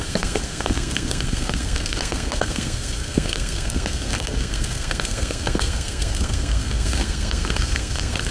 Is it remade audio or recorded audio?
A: remade